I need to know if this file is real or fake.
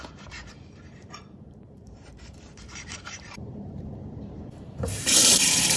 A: fake